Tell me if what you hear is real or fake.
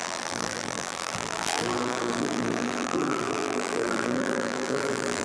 fake